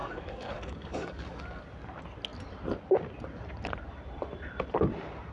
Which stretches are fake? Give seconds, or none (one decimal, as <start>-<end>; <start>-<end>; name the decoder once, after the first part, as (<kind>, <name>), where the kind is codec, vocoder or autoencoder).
0.0-1.6 (codec, DAC)